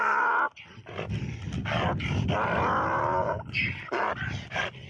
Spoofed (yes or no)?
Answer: no